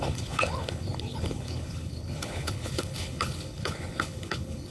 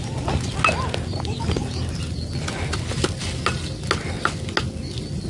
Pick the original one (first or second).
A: second